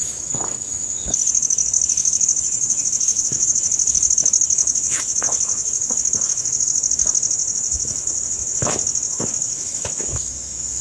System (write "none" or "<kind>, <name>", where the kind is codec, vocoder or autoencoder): autoencoder, DAC-VAE